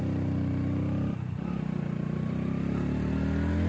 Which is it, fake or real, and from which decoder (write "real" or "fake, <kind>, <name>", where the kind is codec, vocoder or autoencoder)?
real